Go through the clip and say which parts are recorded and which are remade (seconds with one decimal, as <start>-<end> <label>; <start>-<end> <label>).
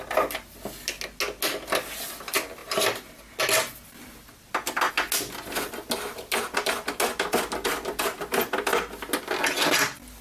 0.0-10.2 recorded